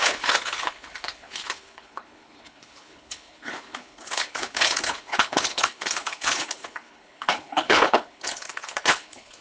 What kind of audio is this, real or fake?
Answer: fake